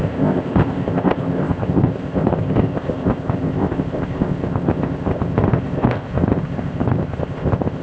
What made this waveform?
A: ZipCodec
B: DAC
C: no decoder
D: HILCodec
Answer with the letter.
A